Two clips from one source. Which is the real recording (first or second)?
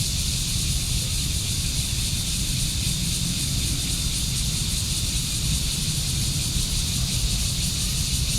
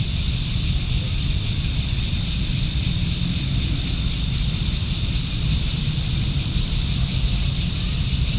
second